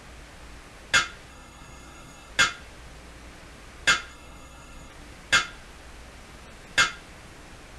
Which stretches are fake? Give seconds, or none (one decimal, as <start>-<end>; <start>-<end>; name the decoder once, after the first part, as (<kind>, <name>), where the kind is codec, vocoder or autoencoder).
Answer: 1.3-2.3 (codec, SNAC); 4.1-4.9